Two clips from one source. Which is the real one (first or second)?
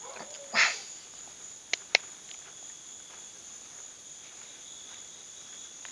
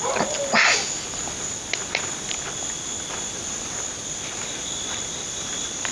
first